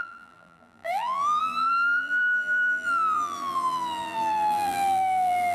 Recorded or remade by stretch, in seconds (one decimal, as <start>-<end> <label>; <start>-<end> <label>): 0.0-5.5 remade